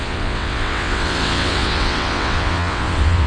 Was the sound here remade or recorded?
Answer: remade